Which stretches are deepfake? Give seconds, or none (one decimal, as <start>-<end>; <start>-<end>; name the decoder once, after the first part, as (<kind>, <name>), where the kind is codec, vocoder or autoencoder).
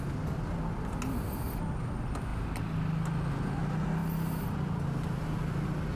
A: none